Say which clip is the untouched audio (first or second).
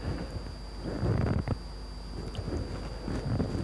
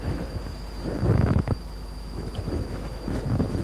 first